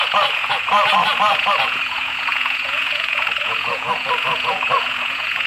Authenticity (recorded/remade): remade